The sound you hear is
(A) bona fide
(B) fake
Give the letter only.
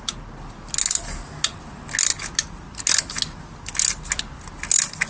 A